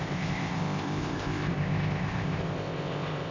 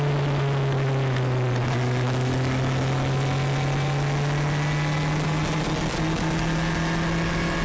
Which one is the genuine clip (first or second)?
second